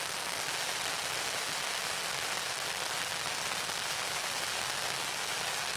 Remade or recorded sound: recorded